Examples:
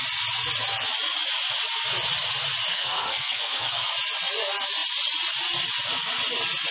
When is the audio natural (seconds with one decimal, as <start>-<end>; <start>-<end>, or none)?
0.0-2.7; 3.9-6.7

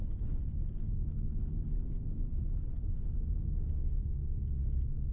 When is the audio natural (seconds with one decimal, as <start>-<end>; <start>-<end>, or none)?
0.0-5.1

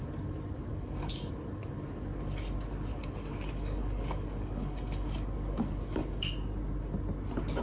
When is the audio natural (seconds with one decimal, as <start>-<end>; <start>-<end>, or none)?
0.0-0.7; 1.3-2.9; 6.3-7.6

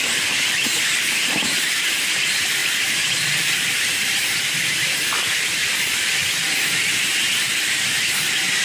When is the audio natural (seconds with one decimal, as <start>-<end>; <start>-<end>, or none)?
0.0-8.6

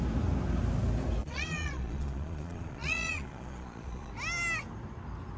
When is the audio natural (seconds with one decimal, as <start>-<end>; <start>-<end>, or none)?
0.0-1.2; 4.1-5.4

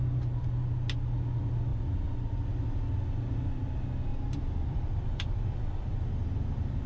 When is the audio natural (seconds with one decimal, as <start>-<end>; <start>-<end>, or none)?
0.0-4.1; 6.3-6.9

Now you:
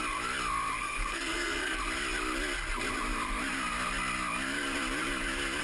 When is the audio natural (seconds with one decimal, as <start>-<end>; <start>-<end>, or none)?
0.0-0.8; 1.8-5.6